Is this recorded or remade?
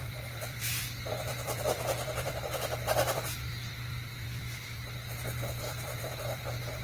remade